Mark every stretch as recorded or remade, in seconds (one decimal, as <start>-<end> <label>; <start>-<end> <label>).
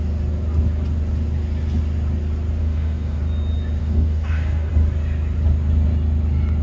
0.0-2.6 recorded; 2.6-3.2 remade; 3.2-3.8 recorded; 3.8-4.7 remade; 4.7-6.6 recorded